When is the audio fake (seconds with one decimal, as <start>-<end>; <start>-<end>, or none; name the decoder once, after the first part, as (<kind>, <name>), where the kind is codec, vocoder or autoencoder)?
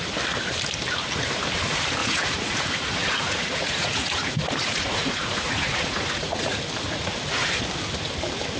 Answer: 2.0-6.6 (vocoder, Vocos)